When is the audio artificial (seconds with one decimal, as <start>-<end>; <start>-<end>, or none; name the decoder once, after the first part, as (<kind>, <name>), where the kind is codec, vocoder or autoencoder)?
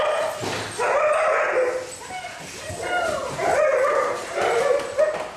3.2-4.6 (vocoder, BigVGAN v2)